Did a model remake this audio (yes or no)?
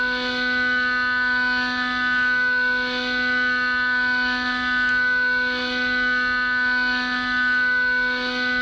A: no